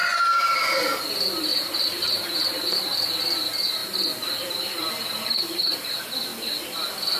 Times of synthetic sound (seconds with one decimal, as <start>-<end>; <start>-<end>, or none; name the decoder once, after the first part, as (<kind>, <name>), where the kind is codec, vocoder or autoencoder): 0.0-0.6 (vocoder, BigVGAN v2); 1.5-2.8; 3.8-5.4